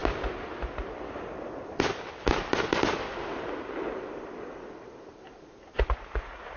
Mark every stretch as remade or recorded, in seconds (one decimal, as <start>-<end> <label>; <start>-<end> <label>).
0.0-3.5 remade; 3.5-5.3 recorded; 5.3-5.9 remade; 5.9-6.6 recorded